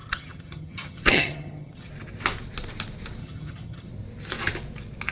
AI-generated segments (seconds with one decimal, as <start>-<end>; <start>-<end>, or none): 0.0-1.9; 3.2-3.9